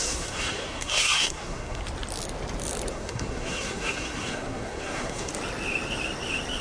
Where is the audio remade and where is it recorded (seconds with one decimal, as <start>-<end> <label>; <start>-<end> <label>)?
0.0-1.8 remade; 1.8-2.9 recorded; 2.9-5.3 remade; 5.3-6.6 recorded